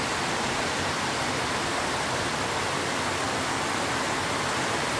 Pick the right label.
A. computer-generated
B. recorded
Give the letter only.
B